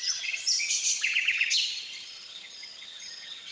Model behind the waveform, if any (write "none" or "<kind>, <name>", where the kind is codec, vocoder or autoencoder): vocoder, HiFi-GAN